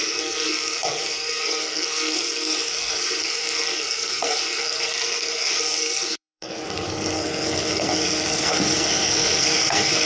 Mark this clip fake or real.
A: fake